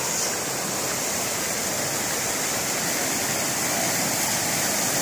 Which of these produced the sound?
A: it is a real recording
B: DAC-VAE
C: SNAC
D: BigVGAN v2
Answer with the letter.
A